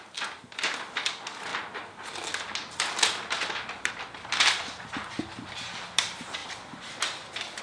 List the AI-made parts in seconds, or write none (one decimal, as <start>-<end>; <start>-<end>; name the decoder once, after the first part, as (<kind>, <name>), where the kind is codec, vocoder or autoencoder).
none